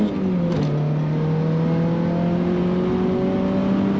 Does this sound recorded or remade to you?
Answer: recorded